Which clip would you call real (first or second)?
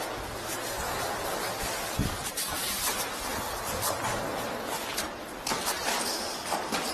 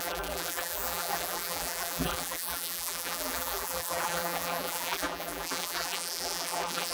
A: first